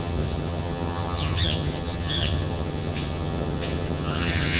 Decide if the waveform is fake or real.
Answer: fake